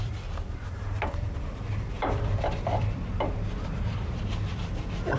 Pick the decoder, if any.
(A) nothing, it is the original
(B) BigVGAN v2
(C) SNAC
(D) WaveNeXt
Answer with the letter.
B